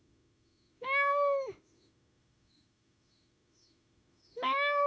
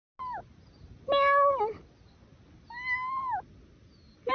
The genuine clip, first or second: second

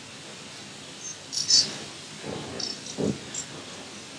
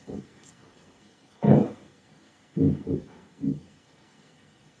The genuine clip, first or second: first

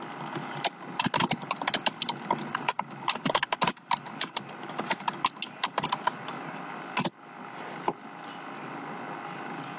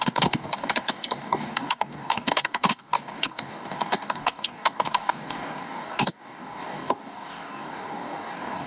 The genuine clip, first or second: first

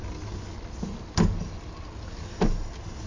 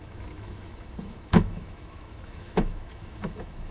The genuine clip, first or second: first